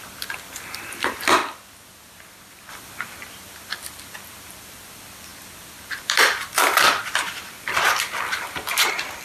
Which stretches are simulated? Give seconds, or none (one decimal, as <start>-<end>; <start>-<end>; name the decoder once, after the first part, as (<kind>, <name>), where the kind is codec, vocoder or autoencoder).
0.0-1.4 (vocoder, BigVGAN v2); 2.7-9.2